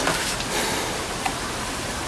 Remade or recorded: recorded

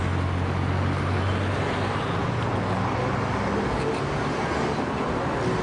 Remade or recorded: recorded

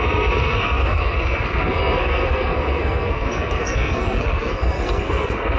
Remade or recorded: remade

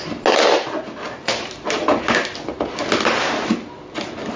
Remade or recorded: recorded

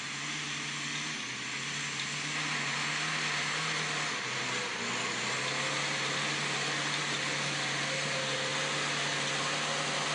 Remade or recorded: recorded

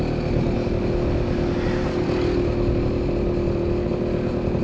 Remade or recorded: recorded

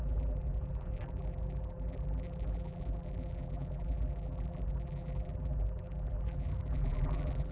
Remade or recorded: remade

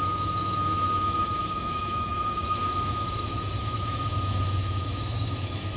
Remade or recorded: remade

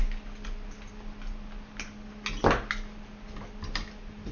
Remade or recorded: recorded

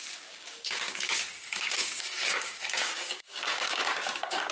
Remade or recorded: remade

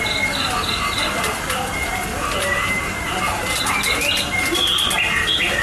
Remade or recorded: recorded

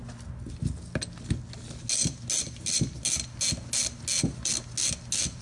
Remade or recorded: recorded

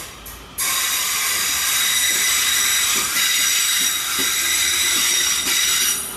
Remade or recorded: recorded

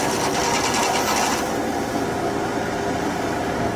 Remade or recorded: recorded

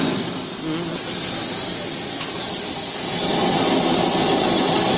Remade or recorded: recorded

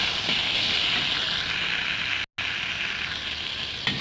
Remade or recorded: recorded